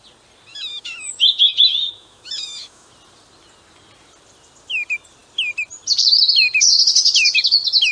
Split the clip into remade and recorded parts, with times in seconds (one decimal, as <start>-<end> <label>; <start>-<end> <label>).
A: 0.0-0.5 recorded; 0.5-2.9 remade; 2.9-7.9 recorded